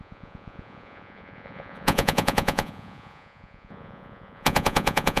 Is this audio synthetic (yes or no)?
yes